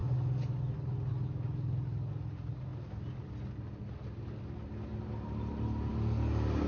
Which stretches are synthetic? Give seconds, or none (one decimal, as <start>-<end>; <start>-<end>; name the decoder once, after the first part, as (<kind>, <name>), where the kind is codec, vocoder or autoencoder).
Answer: none